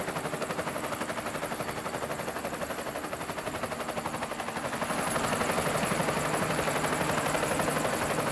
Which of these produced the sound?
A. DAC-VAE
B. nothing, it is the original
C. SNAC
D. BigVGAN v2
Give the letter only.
B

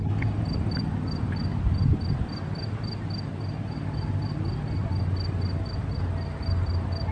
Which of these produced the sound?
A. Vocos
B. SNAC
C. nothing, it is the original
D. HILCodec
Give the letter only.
C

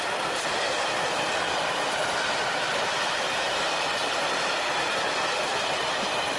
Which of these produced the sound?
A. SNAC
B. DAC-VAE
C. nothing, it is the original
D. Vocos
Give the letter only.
C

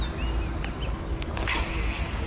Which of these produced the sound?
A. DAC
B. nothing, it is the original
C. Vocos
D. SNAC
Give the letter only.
B